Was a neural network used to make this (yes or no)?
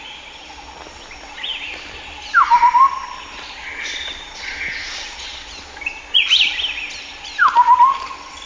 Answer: no